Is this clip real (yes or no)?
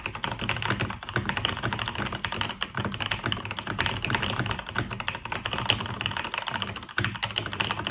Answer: yes